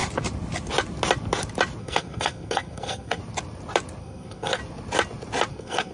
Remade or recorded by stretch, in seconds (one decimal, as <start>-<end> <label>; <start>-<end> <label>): 0.0-1.8 recorded; 1.8-3.2 remade; 3.2-4.0 recorded; 4.0-4.6 remade; 4.6-5.5 recorded; 5.5-5.9 remade